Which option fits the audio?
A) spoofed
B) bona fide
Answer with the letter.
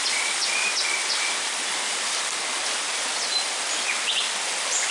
B